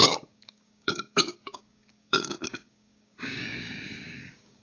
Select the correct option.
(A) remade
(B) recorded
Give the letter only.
A